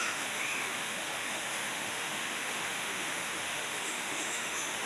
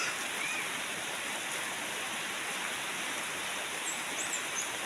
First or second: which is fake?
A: first